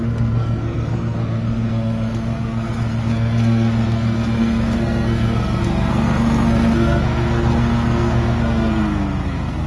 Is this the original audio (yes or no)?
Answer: no